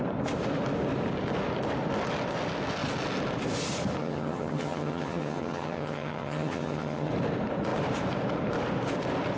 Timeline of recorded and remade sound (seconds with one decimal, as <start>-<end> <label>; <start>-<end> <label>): 0.0-4.0 recorded; 4.0-7.1 remade; 7.1-9.4 recorded